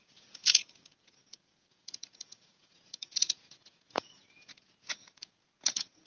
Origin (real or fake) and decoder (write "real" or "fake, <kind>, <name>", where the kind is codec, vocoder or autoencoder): fake, vocoder, Vocos